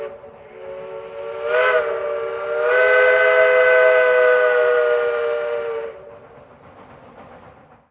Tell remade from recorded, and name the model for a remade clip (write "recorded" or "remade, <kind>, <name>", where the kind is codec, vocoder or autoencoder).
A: recorded